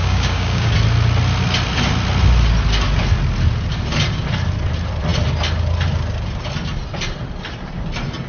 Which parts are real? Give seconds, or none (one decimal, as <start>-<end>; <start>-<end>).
0.7-8.3